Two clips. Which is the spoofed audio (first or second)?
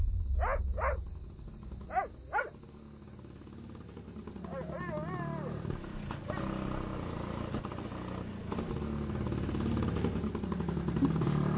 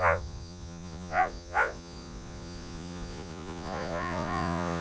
second